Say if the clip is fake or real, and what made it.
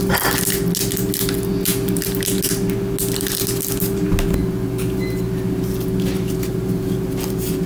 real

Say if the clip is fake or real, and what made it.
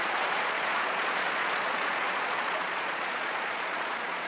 fake, vocoder, Vocos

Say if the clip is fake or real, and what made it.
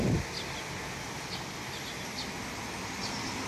real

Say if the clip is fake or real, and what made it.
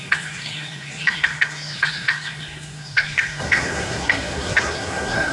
fake, codec, SNAC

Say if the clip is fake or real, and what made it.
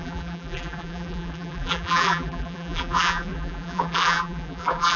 fake, vocoder, BigVGAN v2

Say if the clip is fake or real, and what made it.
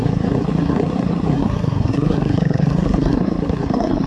fake, codec, SNAC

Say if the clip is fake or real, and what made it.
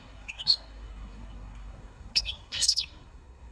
fake, codec, SNAC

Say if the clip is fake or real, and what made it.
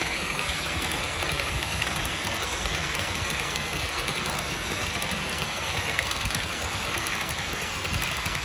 fake, codec, SNAC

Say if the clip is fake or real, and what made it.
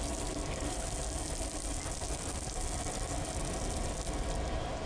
real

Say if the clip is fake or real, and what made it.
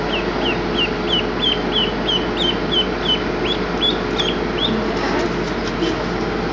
real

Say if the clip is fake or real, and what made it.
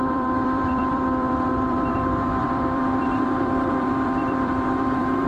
fake, vocoder, BigVGAN v2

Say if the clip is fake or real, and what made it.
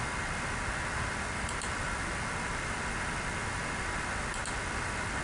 real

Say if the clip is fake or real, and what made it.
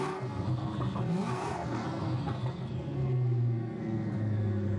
fake, codec, SNAC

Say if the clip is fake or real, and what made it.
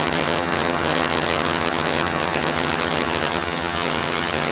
fake, vocoder, HiFi-GAN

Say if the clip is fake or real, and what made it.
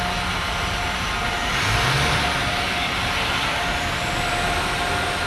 real